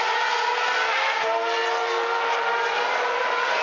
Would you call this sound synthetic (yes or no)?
no